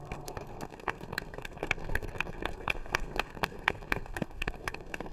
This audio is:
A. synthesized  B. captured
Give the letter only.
A